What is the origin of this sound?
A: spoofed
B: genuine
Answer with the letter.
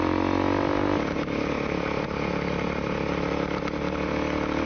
B